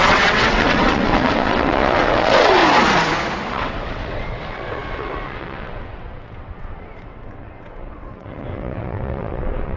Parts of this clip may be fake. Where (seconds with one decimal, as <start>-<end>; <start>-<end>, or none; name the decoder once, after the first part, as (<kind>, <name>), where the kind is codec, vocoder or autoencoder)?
0.0-2.6 (vocoder, WaveNeXt); 3.5-9.8